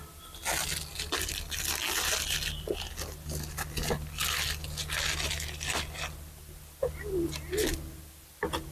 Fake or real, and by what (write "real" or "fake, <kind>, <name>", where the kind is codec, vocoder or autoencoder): real